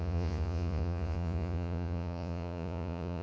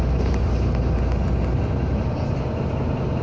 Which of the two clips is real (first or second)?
second